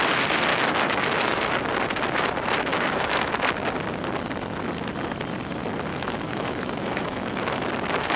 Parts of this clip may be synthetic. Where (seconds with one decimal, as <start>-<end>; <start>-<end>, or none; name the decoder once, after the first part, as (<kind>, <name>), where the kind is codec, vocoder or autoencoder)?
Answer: 0.5-1.4 (autoencoder, DAC-VAE); 2.7-3.3; 5.9-7.7